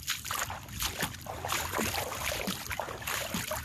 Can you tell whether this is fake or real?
real